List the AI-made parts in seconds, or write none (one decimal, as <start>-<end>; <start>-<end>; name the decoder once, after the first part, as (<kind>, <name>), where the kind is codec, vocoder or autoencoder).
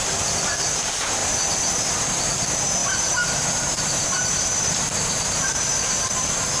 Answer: 0.0-1.2 (vocoder, BigVGAN v2); 1.7-6.6